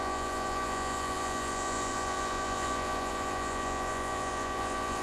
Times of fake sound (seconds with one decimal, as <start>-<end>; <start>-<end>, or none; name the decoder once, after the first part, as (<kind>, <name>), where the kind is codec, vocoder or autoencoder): 0.0-5.0 (vocoder, Vocos)